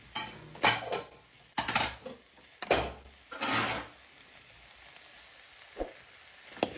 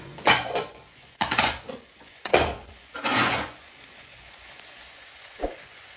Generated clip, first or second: second